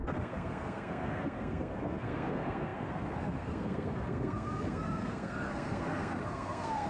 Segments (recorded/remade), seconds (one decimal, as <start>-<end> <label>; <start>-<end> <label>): 0.0-6.9 remade